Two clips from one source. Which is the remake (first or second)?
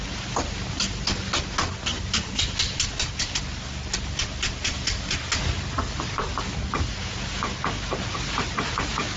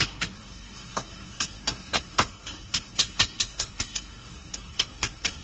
second